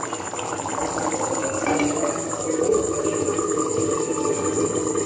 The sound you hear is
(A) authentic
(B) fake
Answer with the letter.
A